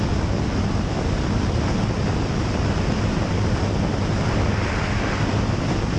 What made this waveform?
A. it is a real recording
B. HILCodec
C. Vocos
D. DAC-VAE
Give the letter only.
A